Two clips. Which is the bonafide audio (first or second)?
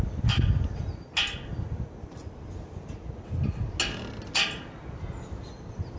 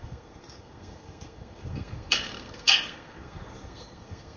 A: first